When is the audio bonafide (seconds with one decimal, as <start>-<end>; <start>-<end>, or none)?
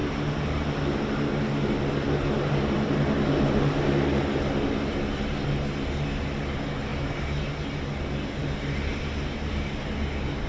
0.0-10.5